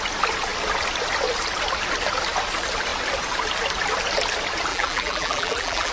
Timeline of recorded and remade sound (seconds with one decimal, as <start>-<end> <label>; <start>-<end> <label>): 0.0-4.7 recorded; 4.7-5.9 remade